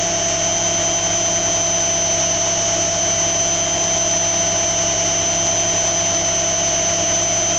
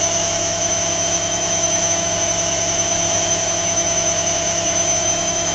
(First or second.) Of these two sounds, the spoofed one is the second